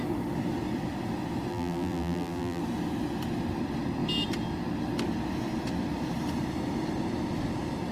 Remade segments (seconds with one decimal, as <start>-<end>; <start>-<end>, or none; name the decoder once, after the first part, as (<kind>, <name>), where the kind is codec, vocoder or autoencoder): 1.5-2.6 (vocoder, BigVGAN v2)

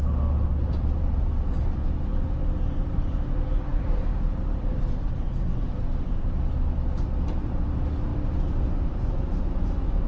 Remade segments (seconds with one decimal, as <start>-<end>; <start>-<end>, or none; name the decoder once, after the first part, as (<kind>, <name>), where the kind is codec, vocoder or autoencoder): 0.6-1.6 (vocoder, BigVGAN v2); 2.1-2.6; 3.7-5.5

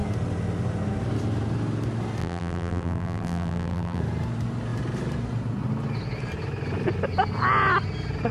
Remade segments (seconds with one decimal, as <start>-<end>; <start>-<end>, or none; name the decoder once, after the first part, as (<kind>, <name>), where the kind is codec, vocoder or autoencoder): 2.2-4.0 (vocoder, BigVGAN v2)

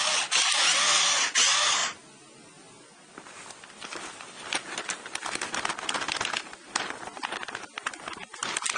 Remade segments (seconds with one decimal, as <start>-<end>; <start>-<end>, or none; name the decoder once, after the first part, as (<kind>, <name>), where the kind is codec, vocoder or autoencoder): none